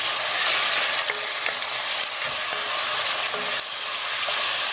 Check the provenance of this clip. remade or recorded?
recorded